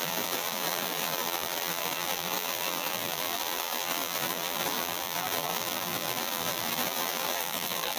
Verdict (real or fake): fake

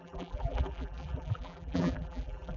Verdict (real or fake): fake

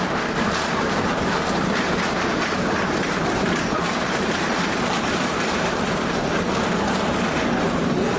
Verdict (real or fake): fake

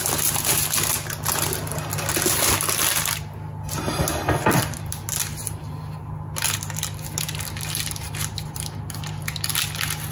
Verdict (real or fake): real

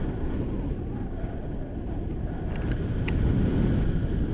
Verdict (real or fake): real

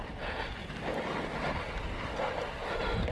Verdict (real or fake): fake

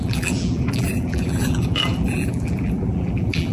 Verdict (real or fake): fake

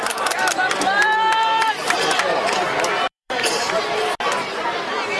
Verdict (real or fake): fake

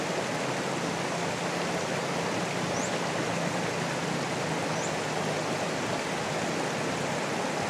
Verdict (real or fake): real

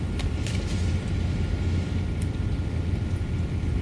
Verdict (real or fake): real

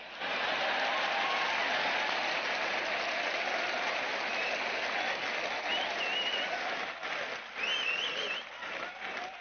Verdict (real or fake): real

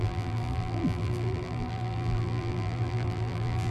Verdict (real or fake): fake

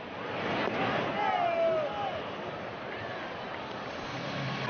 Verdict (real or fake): real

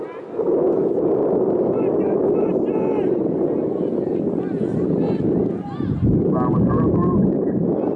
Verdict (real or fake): fake